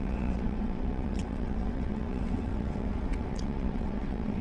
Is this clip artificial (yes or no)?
yes